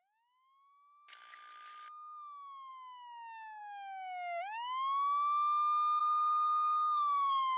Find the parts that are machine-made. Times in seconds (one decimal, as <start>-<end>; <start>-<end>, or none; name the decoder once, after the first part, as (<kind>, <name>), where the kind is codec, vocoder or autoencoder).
6.0-7.6 (codec, SNAC)